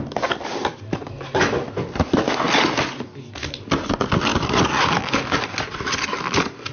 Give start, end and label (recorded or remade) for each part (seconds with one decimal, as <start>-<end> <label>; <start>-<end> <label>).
0.0-6.7 recorded